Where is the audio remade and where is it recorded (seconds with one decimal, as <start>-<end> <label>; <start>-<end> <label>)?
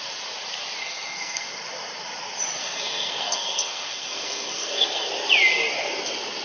0.0-0.8 recorded; 0.8-1.5 remade; 1.5-2.6 recorded; 2.6-5.1 remade; 5.1-6.4 recorded